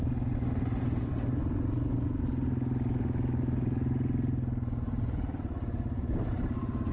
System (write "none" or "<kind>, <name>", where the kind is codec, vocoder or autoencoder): none